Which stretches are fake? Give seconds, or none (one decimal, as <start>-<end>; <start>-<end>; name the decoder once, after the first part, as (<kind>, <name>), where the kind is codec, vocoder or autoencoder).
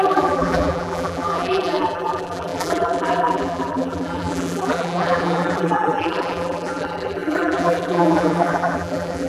0.0-9.3 (vocoder, BigVGAN v2)